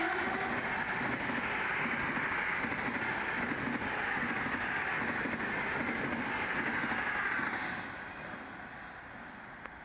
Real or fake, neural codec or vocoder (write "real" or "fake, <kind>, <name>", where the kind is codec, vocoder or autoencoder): real